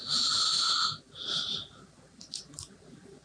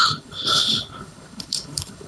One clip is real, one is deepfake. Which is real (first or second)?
first